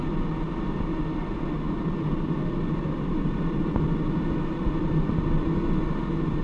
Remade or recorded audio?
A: recorded